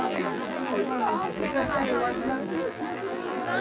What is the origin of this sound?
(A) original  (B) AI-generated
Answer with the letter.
B